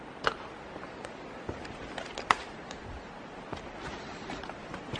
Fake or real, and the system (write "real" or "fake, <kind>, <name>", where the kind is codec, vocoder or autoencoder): real